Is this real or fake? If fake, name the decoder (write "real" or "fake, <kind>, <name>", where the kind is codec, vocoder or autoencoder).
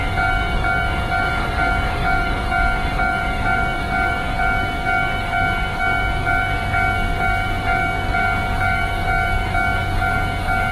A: fake, codec, DAC